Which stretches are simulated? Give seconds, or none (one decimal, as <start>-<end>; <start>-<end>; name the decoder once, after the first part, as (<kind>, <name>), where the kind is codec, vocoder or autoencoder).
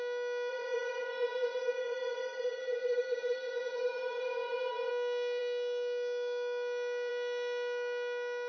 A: 0.5-4.9 (vocoder, Vocos)